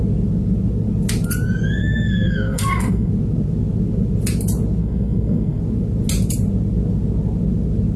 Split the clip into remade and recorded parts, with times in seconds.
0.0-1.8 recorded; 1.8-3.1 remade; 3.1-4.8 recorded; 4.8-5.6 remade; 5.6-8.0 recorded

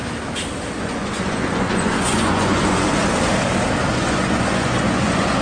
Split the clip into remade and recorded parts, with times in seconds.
0.0-0.8 recorded; 0.8-3.0 remade; 3.0-3.9 recorded; 3.9-5.4 remade